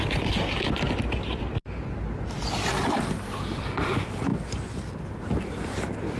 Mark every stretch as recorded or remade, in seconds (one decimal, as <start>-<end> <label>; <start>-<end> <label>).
0.0-6.2 recorded